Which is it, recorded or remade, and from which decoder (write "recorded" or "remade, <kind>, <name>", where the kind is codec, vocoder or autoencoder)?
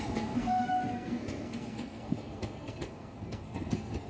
remade, codec, SNAC